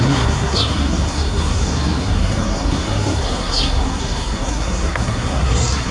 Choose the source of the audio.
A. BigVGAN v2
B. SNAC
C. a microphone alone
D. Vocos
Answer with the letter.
B